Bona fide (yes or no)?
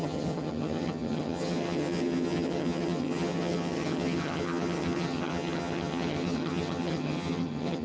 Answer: no